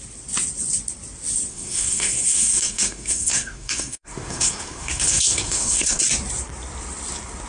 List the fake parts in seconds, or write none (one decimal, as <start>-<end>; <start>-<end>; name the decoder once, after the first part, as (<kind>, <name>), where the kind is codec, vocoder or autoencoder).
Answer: 1.5-6.0 (codec, SNAC)